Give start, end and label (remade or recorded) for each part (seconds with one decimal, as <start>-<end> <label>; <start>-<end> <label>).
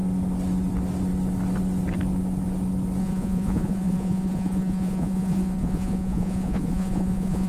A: 0.0-3.0 recorded; 3.0-7.5 remade